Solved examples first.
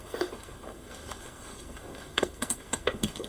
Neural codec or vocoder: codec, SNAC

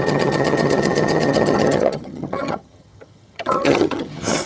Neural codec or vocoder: vocoder, HiFi-GAN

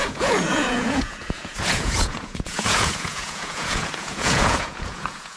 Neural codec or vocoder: vocoder, Vocos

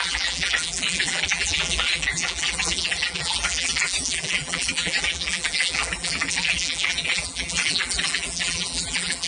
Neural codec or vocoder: vocoder, BigVGAN v2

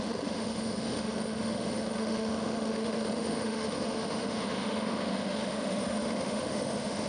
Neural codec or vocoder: autoencoder, DAC-VAE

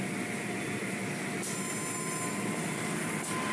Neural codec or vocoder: none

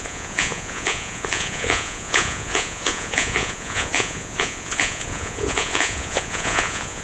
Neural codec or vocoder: vocoder, Vocos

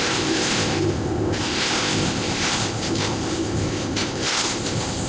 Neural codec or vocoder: codec, ZipCodec